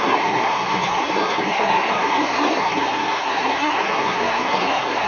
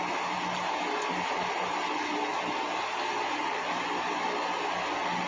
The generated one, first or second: first